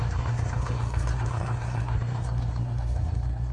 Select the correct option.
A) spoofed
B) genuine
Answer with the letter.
A